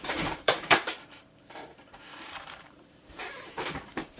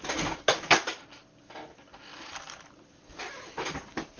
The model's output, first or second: first